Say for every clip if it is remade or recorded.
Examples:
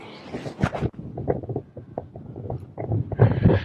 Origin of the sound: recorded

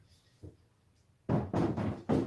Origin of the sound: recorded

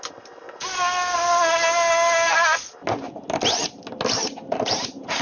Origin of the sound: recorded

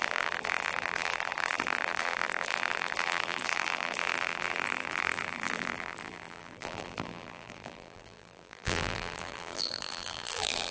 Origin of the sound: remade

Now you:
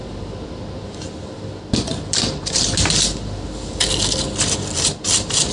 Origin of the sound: remade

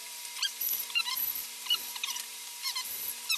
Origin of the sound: remade